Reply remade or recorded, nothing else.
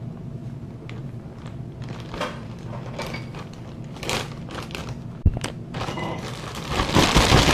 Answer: recorded